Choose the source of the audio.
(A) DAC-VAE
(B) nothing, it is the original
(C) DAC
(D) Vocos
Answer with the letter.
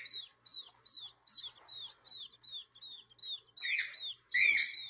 B